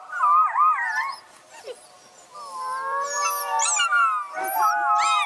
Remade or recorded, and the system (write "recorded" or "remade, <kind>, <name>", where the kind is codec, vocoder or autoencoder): recorded